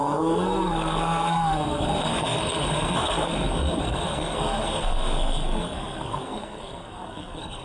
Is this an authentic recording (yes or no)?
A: no